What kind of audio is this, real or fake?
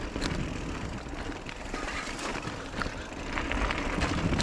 real